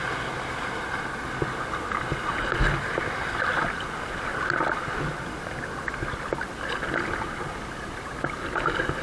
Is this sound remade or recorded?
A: recorded